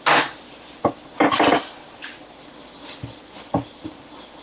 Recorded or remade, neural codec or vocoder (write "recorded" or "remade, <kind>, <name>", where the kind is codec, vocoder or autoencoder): recorded